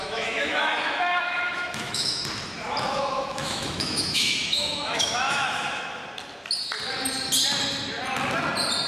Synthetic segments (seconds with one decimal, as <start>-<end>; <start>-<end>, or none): 0.0-2.2; 2.9-6.0